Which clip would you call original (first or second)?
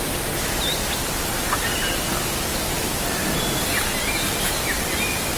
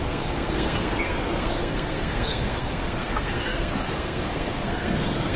first